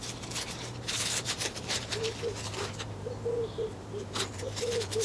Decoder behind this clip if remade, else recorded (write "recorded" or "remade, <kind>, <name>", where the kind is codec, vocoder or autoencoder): remade, vocoder, BigVGAN v2